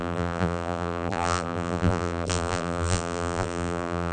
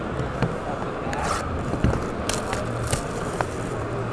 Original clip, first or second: second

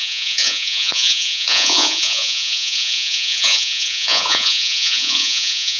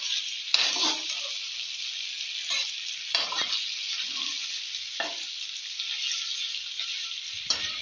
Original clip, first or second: second